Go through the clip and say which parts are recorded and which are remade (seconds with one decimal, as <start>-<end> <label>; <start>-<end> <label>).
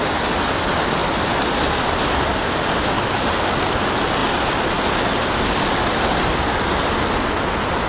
0.0-7.9 recorded